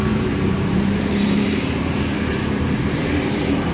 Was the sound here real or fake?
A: fake